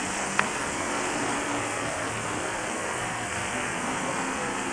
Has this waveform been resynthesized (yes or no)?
yes